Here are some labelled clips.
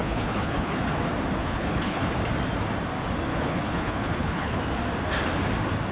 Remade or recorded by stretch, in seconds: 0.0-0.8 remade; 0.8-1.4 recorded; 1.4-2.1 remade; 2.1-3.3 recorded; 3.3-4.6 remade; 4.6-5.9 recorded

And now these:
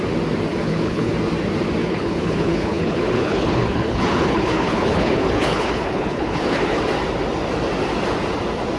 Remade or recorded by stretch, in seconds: 0.0-0.5 recorded; 0.5-1.1 remade; 1.1-1.8 recorded; 1.8-6.8 remade; 6.8-8.8 recorded

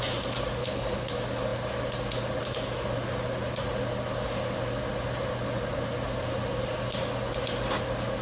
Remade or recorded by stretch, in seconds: 0.0-0.6 recorded; 0.6-1.1 remade; 1.1-8.2 recorded